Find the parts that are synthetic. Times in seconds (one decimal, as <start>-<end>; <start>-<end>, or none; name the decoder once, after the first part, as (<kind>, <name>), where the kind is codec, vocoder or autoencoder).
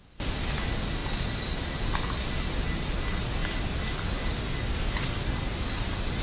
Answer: none